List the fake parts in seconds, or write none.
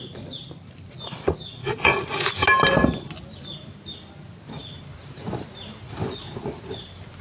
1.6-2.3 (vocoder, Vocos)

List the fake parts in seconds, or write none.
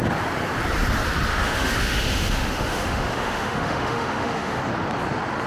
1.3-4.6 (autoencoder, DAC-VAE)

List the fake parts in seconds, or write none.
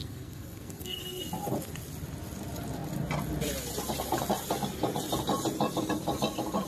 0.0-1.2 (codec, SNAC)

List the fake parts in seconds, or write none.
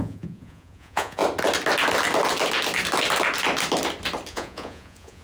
0.0-1.2 (vocoder, Vocos); 4.3-5.2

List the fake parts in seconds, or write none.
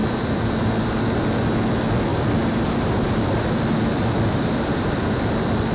0.0-0.8 (vocoder, BigVGAN v2); 2.1-5.7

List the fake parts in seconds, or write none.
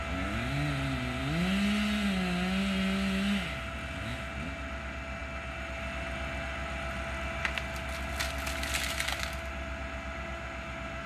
none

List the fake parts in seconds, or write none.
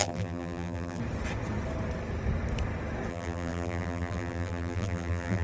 0.0-1.0 (vocoder, BigVGAN v2); 3.1-5.4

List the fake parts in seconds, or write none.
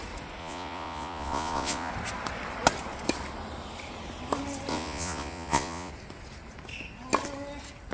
0.4-1.9 (vocoder, Vocos); 4.7-5.9